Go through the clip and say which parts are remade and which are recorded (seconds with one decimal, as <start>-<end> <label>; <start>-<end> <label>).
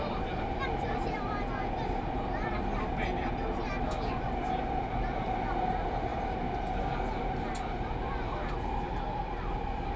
0.0-10.0 recorded